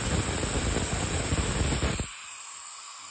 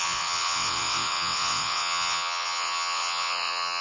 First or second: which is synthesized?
second